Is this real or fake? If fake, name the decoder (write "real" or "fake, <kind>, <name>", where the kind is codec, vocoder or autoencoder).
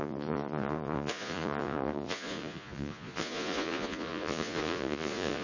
fake, vocoder, Vocos